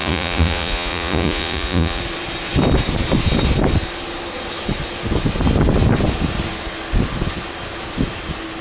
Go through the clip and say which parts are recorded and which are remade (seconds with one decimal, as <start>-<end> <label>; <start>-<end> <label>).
0.0-2.0 remade; 2.0-8.6 recorded